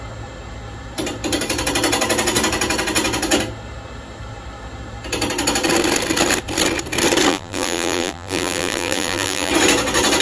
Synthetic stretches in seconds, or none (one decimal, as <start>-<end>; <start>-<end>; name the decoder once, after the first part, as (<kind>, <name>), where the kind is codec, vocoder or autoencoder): 7.3-9.5 (vocoder, BigVGAN v2)

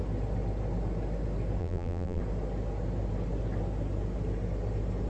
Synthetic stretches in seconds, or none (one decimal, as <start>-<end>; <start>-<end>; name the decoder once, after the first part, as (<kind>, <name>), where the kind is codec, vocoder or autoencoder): 1.6-2.2 (vocoder, BigVGAN v2)

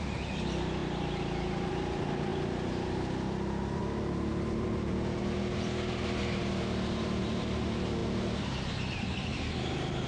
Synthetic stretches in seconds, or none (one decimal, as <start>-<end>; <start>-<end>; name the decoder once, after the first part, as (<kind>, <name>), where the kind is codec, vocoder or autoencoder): none

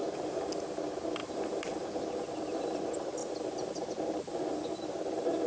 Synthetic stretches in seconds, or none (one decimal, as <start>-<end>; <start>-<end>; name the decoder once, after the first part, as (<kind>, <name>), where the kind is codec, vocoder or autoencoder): 0.0-0.5 (vocoder, BigVGAN v2); 1.2-2.0

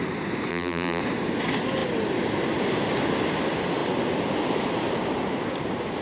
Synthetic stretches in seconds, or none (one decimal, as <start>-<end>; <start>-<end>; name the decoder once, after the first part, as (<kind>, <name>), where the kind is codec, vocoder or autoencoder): 0.5-1.0 (vocoder, BigVGAN v2)

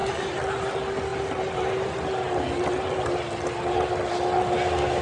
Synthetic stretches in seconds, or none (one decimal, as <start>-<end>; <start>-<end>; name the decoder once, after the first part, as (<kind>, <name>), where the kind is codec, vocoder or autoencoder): none

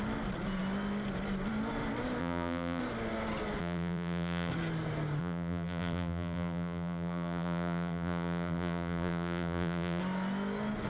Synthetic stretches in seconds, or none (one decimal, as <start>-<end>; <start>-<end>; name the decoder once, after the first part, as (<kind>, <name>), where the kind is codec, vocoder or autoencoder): 2.2-2.8 (vocoder, BigVGAN v2); 3.6-4.5; 5.2-10.0

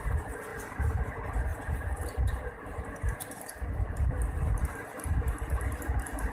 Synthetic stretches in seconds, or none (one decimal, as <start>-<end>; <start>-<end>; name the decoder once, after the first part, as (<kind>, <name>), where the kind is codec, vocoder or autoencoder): 0.0-6.3 (vocoder, BigVGAN v2)